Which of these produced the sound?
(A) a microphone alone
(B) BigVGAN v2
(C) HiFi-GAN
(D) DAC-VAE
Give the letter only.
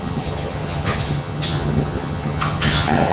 C